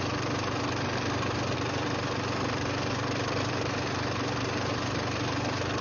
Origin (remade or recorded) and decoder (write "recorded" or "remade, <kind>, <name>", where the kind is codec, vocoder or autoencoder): recorded